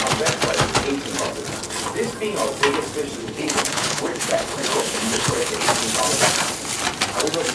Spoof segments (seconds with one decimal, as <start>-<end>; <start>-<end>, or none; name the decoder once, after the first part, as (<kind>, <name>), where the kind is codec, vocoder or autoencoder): 3.2-5.5 (codec, HILCodec)